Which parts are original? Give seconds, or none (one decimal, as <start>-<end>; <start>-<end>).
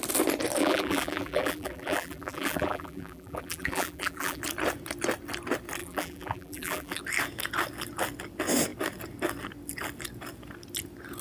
0.0-0.6; 4.4-5.8; 7.0-11.2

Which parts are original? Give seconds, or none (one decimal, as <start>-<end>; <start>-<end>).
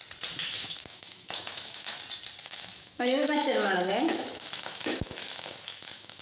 0.0-0.4; 2.0-2.4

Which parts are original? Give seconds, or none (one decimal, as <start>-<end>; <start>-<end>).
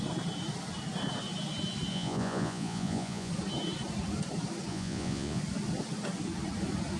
0.0-1.9; 3.3-4.7; 5.4-7.0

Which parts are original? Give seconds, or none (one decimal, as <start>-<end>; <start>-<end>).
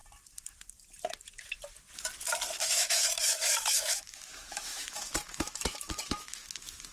0.0-2.6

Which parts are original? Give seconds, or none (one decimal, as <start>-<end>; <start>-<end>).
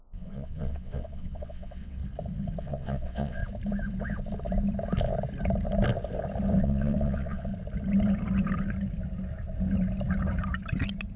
2.0-2.6; 3.4-6.6; 7.5-11.2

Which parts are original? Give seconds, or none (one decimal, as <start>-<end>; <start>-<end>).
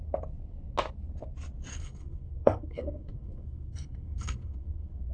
0.0-1.7